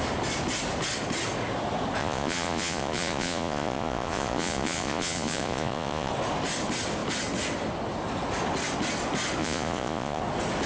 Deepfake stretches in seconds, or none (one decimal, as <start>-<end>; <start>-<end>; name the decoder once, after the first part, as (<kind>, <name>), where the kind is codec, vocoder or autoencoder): 2.0-6.1 (vocoder, Vocos); 9.4-10.2